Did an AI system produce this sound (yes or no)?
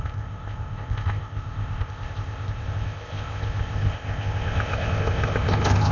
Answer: yes